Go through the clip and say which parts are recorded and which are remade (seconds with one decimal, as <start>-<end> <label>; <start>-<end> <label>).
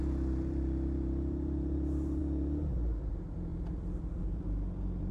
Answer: 0.0-3.5 remade; 3.5-4.2 recorded; 4.2-5.1 remade